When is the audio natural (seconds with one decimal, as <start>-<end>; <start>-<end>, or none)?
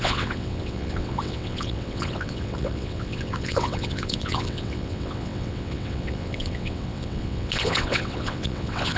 none